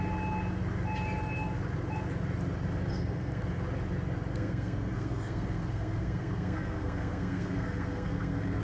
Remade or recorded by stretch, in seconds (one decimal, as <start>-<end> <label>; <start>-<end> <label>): 0.0-2.9 recorded; 2.9-3.4 remade; 3.4-4.3 recorded; 4.3-8.6 remade